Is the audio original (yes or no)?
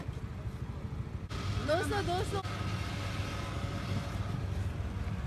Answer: yes